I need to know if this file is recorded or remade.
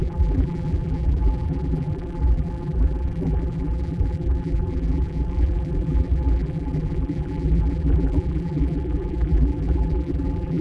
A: remade